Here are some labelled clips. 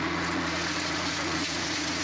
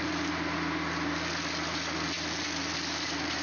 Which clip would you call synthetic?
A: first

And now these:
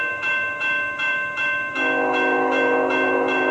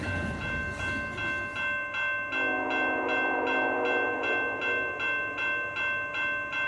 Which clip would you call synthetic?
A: first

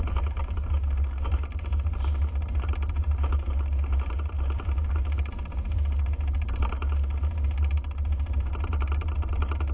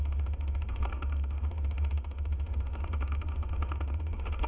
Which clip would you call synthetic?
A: second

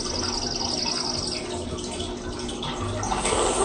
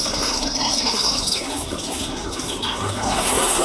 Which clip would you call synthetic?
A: second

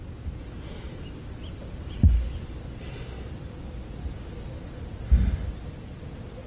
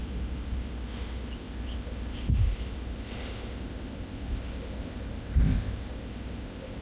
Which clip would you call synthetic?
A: second